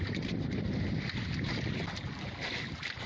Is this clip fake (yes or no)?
no